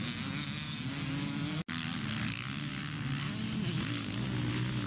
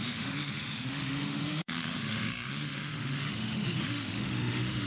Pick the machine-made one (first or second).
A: second